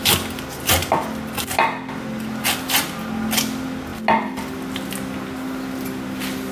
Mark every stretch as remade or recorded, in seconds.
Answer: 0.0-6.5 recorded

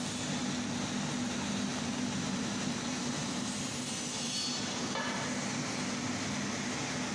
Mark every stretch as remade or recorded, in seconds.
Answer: 0.0-1.7 recorded; 1.7-6.0 remade; 6.0-7.1 recorded